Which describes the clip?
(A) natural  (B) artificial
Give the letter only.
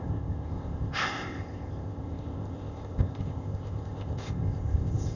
B